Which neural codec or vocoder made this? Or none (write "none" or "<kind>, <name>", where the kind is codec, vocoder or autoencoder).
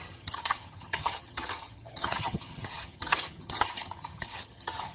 vocoder, HiFi-GAN